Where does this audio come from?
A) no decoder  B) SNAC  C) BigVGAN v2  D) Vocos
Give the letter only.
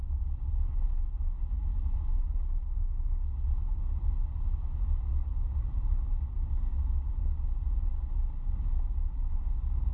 A